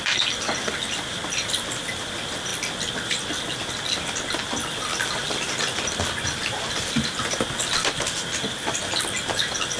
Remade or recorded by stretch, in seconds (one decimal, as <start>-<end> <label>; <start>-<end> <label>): 0.0-9.8 recorded